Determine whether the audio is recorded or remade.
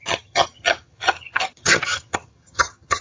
remade